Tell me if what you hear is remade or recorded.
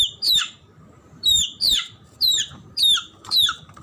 remade